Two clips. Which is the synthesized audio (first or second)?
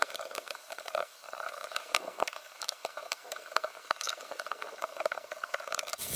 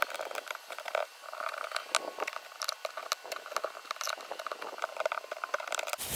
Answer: first